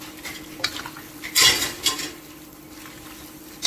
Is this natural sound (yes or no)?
yes